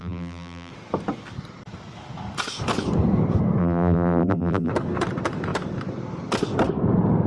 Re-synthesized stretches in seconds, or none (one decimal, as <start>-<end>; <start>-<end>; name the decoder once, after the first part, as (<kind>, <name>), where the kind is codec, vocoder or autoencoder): 0.0-0.7 (vocoder, BigVGAN v2); 3.6-4.7